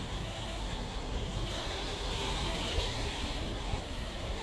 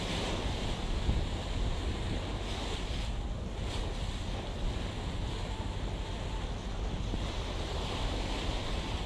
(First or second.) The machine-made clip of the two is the first